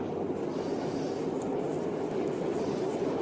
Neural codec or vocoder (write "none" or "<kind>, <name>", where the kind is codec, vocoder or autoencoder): none